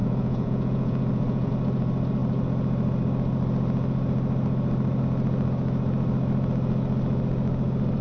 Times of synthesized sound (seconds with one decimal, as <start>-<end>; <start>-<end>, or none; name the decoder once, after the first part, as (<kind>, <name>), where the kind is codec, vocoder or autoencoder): 0.0-1.5 (vocoder, Vocos)